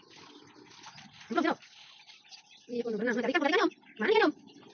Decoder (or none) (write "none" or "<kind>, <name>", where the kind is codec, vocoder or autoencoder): none